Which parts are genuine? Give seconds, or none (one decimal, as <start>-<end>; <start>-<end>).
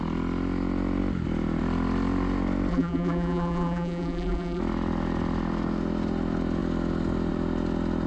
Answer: 0.0-2.7; 4.6-8.1